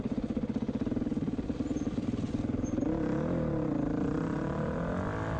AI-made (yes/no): no